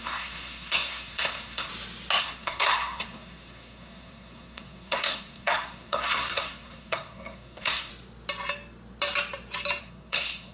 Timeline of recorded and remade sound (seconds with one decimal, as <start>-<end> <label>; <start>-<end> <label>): 0.0-1.7 remade; 1.7-2.2 recorded; 2.2-7.9 remade; 7.9-9.8 recorded; 9.8-10.5 remade

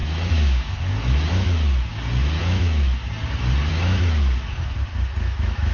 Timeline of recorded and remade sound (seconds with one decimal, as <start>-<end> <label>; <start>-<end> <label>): 0.0-1.9 remade; 1.9-2.4 recorded; 2.4-3.0 remade; 3.0-3.7 recorded; 3.7-5.7 remade

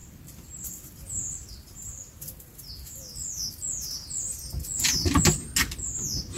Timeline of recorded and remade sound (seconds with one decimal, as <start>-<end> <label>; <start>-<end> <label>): 0.0-1.5 remade; 1.5-3.6 recorded; 3.6-4.5 remade; 4.5-6.4 recorded

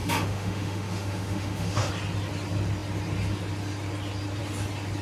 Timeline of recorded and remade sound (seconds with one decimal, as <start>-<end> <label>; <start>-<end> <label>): 0.0-1.9 remade; 1.9-5.0 recorded

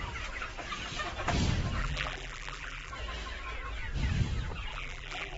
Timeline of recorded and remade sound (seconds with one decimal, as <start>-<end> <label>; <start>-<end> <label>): 0.0-1.8 recorded; 1.8-2.9 remade; 2.9-4.7 recorded; 4.7-5.4 remade